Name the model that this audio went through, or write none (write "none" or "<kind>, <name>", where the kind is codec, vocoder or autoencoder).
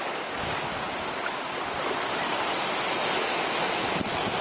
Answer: none